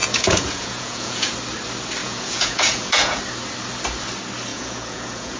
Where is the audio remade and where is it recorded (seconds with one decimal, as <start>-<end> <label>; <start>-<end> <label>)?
0.0-1.3 remade; 1.3-2.0 recorded; 2.0-3.2 remade; 3.2-4.5 recorded; 4.5-5.4 remade